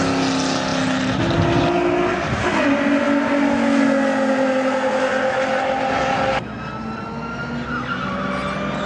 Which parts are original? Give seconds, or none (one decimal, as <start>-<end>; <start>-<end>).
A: 0.0-8.9